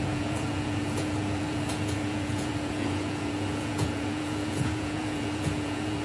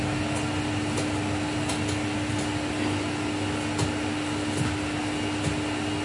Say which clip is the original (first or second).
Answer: second